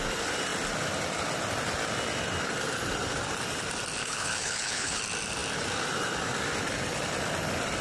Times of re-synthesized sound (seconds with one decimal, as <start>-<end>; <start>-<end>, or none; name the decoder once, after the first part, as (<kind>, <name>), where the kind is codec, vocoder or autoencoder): 4.0-5.0 (codec, HILCodec)